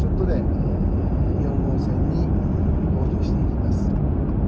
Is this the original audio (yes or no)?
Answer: yes